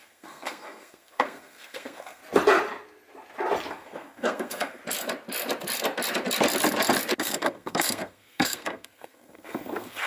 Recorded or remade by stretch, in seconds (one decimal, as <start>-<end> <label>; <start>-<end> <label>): 0.0-2.2 remade; 2.2-3.7 recorded; 3.7-4.8 remade; 4.8-7.2 recorded; 7.2-10.1 remade